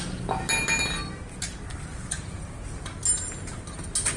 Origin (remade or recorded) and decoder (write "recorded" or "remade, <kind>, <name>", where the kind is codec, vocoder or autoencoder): recorded